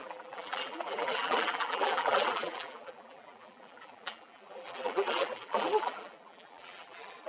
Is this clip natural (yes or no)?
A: no